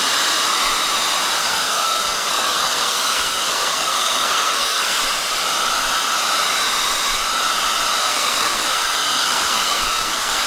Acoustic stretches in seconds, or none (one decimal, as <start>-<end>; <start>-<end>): 0.0-1.4; 5.0-8.0